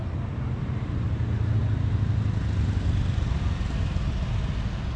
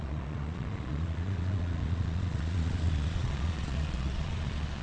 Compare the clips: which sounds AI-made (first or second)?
second